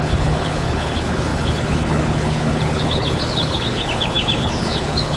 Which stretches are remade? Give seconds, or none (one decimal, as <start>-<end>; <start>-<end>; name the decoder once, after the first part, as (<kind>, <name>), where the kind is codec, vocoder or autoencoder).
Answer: 0.0-5.2 (codec, HILCodec)